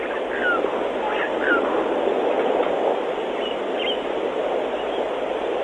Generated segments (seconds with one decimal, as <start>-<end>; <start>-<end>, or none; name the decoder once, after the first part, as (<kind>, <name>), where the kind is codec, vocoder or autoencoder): none